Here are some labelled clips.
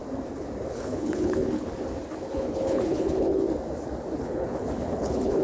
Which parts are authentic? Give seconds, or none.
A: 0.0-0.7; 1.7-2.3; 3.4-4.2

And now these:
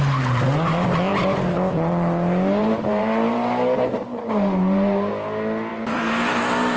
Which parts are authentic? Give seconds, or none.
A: 0.0-2.6; 5.1-5.7

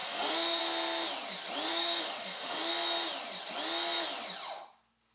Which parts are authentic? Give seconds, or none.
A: 0.6-1.7; 2.7-5.1

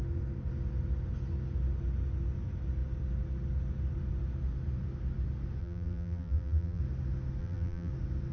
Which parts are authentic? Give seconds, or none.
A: 0.0-5.6; 6.8-7.4; 7.9-8.3

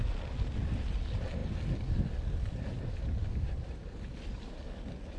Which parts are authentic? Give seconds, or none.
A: 0.0-5.2

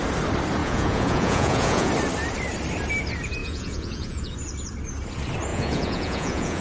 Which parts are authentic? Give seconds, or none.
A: 0.0-0.6; 1.9-3.4; 4.3-5.5